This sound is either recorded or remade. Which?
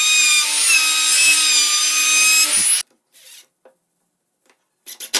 recorded